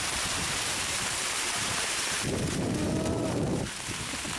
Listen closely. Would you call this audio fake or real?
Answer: fake